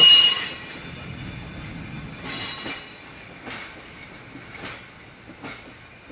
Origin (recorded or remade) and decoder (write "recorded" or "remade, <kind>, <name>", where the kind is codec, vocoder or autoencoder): recorded